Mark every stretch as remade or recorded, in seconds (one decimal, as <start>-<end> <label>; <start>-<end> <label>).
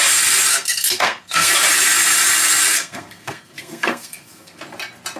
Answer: 0.0-0.5 recorded; 0.5-1.5 remade; 1.5-2.7 recorded; 2.7-4.6 remade; 4.6-5.2 recorded